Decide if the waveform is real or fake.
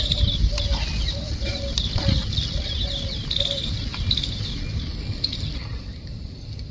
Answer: real